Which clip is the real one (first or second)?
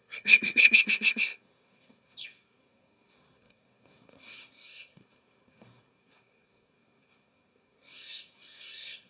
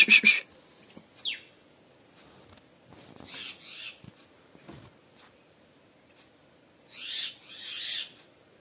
second